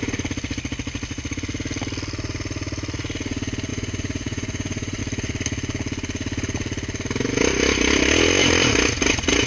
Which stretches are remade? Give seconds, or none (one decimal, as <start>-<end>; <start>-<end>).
3.7-5.0